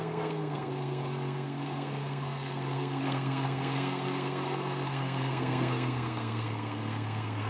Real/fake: fake